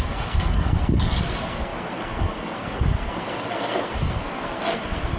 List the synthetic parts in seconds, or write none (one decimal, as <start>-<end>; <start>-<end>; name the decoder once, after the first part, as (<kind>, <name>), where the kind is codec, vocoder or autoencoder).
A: 0.0-5.2 (codec, SNAC)